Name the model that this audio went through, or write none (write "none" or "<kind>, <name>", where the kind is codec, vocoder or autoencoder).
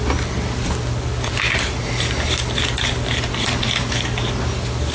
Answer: none